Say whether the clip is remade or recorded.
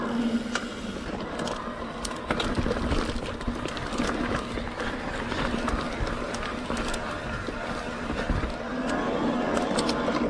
recorded